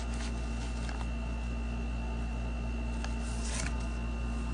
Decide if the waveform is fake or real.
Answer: real